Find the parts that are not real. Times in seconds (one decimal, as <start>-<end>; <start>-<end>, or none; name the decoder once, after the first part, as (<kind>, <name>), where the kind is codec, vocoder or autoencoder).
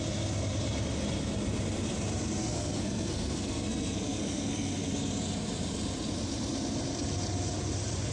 2.4-4.9 (codec, SNAC)